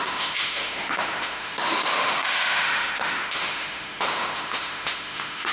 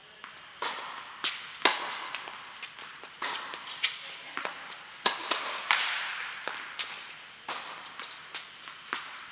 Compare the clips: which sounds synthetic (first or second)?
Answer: first